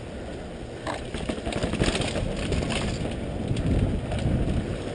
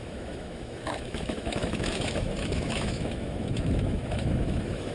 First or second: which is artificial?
second